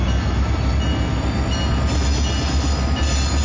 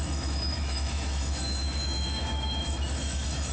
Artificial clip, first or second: second